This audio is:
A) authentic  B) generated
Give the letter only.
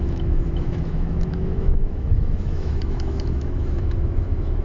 B